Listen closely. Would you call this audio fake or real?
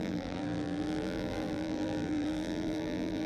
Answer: fake